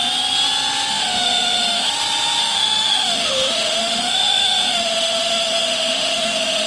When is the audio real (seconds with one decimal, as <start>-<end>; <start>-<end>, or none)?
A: 0.0-0.9; 1.9-2.4